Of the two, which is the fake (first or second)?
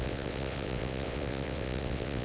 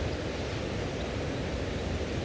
first